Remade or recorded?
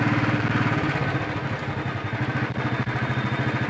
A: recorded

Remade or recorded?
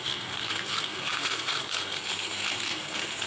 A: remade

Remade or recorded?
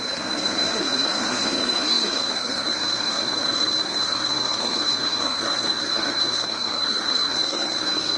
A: remade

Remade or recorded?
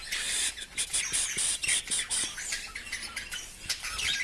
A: recorded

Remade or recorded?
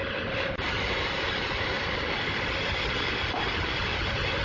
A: recorded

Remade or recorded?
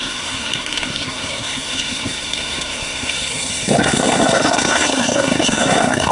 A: remade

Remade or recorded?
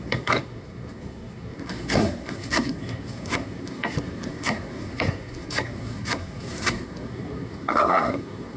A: remade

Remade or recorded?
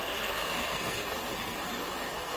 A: remade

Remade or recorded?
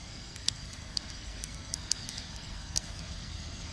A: remade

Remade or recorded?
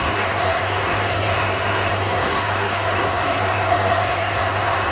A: remade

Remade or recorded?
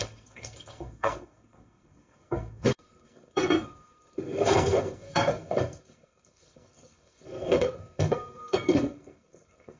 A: remade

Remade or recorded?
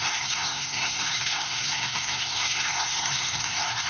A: remade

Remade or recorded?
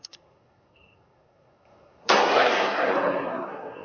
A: remade